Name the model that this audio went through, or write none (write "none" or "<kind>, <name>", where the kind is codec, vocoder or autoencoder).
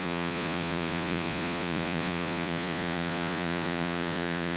vocoder, Vocos